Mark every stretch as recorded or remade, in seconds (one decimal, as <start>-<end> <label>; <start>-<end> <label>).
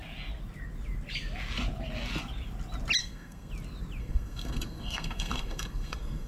0.0-3.0 recorded; 3.0-3.5 remade; 3.5-4.0 recorded; 4.0-6.3 remade